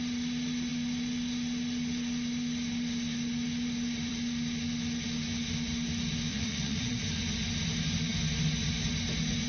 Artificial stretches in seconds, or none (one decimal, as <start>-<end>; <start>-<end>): 6.3-7.0